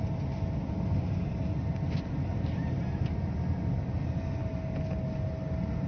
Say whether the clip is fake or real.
real